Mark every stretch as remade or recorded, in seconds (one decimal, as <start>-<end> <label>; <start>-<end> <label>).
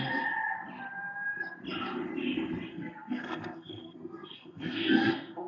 0.0-2.7 recorded; 2.7-5.5 remade